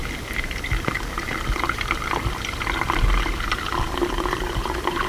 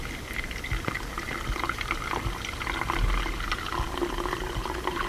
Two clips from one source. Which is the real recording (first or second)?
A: second